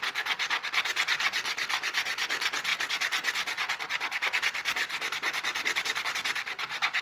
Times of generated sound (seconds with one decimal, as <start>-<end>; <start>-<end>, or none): none